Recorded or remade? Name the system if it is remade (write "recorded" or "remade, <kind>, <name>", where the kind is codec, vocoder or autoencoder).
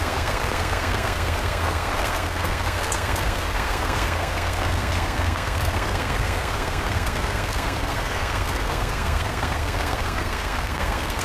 remade, codec, SNAC